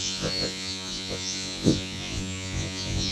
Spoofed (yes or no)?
yes